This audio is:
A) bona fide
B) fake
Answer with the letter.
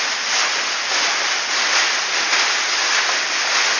A